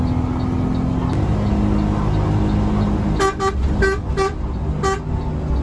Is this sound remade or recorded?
recorded